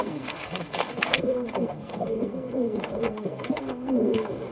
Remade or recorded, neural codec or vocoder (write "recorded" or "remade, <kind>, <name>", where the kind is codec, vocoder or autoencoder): remade, codec, SNAC